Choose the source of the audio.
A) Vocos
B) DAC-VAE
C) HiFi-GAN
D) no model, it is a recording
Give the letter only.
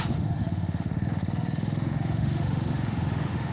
B